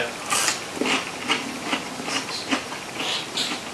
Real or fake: real